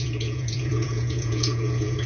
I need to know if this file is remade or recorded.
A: remade